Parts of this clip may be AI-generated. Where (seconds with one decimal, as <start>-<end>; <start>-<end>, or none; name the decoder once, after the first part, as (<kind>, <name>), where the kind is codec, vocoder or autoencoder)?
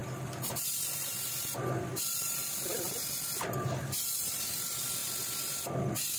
0.0-5.0 (vocoder, BigVGAN v2)